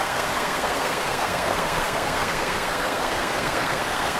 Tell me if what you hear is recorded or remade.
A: remade